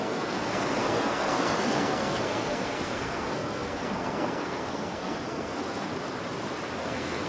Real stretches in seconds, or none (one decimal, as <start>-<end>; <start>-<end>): 5.9-6.8